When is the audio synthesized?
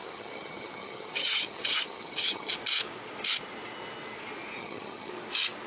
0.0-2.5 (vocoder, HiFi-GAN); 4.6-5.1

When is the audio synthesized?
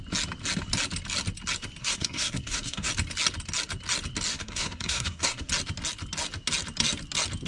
1.8-2.9 (codec, SNAC); 4.3-5.5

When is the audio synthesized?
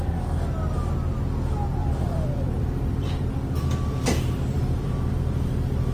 1.8-5.1 (vocoder, BigVGAN v2)